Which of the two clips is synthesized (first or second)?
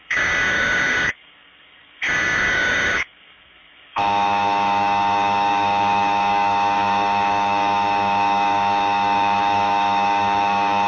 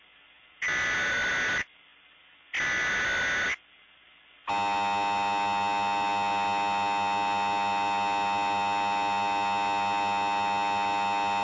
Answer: first